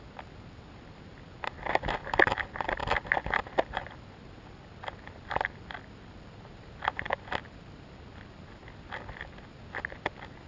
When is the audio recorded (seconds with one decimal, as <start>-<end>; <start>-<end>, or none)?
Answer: 0.0-10.5